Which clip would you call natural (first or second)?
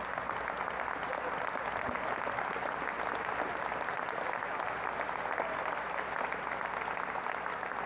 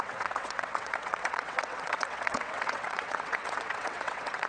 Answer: first